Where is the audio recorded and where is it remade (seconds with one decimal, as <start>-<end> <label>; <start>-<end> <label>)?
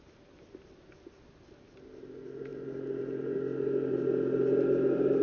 0.0-5.2 recorded